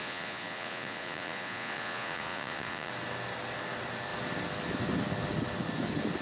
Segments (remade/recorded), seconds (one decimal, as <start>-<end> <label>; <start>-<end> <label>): 0.0-2.9 remade; 2.9-6.2 recorded